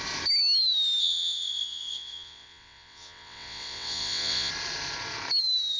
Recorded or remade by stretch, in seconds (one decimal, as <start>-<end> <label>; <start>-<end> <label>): 0.0-1.0 recorded; 1.0-4.5 remade; 4.5-5.8 recorded